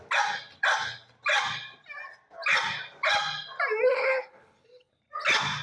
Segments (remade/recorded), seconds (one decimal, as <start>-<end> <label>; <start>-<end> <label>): 0.0-3.9 recorded; 3.9-5.0 remade; 5.0-5.6 recorded